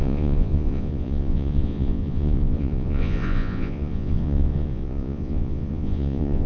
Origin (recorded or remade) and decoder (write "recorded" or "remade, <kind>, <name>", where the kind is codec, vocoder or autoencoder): remade, vocoder, Vocos